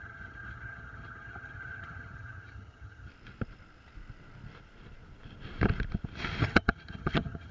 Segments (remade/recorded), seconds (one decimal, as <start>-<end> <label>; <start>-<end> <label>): 0.0-3.1 remade; 3.1-6.4 recorded; 6.4-7.5 remade